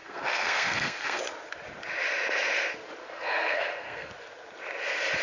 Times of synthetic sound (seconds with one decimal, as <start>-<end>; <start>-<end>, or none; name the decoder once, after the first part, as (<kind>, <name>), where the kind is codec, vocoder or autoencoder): 0.0-1.2 (codec, SNAC); 3.0-4.1